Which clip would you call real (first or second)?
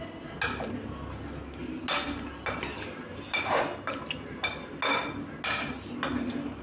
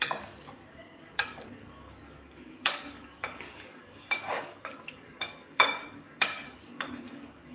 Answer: first